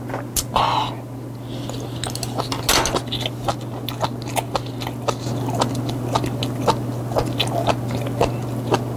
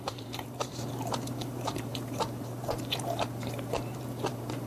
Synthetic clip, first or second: second